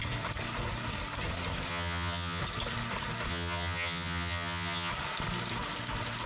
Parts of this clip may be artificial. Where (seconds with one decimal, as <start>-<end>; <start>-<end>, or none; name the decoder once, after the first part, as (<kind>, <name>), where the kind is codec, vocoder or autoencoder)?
1.7-2.4 (vocoder, HiFi-GAN); 3.3-4.9